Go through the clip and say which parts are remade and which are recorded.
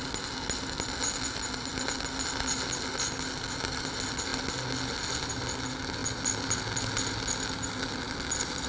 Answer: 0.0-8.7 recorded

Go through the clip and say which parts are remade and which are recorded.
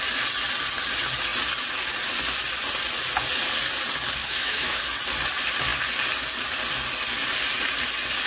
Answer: 0.0-4.2 recorded; 4.2-4.8 remade; 4.8-8.3 recorded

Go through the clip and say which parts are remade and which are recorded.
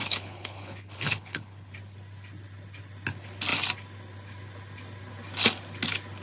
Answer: 0.0-1.7 remade; 1.7-6.2 recorded